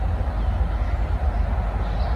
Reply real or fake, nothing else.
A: real